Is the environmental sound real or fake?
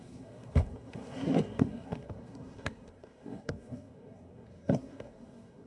fake